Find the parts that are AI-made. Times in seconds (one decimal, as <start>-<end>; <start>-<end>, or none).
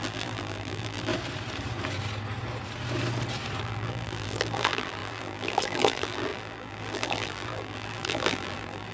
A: 0.0-1.1; 3.6-8.9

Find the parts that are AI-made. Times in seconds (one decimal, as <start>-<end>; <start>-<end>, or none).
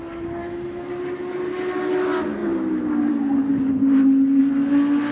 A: 0.4-0.9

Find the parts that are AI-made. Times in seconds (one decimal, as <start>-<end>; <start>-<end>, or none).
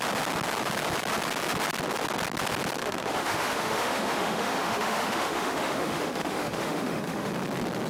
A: 2.8-7.3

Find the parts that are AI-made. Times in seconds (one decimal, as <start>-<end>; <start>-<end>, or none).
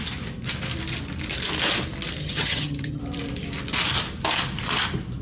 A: 2.2-3.0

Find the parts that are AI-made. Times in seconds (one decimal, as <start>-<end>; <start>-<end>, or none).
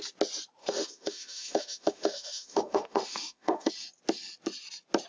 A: 0.6-3.7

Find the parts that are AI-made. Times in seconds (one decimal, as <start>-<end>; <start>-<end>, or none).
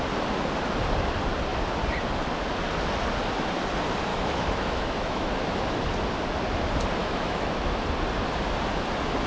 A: 4.1-5.3; 7.0-7.6